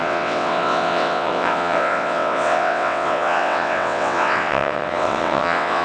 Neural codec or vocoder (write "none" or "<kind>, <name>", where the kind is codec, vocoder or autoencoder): vocoder, WaveNeXt